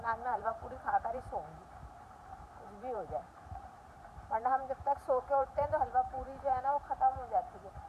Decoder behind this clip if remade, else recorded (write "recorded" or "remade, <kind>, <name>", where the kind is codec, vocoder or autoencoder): remade, vocoder, BigVGAN v2